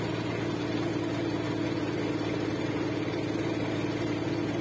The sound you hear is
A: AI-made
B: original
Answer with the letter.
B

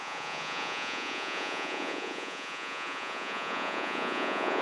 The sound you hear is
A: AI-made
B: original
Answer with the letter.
A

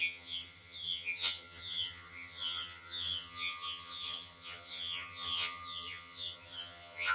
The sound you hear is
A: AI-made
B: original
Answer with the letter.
A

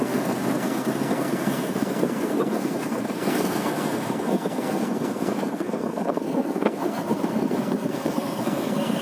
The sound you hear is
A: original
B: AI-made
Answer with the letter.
B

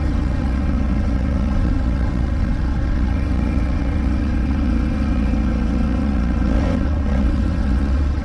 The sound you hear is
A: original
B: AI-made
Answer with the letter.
B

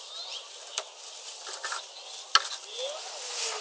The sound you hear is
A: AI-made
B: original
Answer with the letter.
B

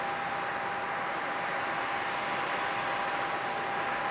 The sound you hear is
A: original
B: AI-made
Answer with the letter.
A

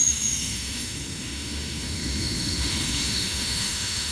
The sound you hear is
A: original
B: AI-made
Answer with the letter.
B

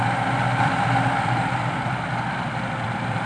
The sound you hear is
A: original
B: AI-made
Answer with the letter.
B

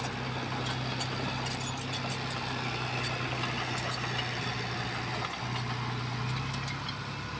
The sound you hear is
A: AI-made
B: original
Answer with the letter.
B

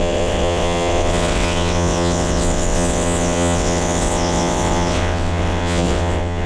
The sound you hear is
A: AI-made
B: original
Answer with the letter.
A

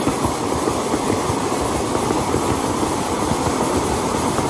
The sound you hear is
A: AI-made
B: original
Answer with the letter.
B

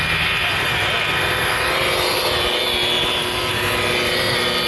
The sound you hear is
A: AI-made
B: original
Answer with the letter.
B